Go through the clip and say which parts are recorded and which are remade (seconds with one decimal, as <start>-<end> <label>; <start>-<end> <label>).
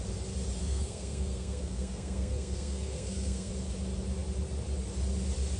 0.0-0.6 recorded; 0.6-3.5 remade; 3.5-5.6 recorded